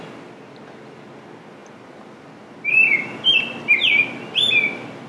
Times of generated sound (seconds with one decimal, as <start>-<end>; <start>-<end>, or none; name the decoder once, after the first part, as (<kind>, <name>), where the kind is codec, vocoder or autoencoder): none